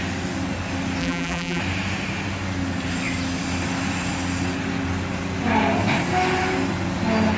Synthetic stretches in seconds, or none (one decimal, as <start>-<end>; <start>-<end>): 1.0-1.6